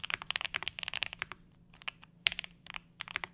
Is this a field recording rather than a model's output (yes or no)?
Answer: no